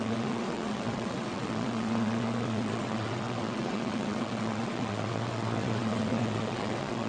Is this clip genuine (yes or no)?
no